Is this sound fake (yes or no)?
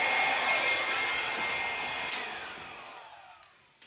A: no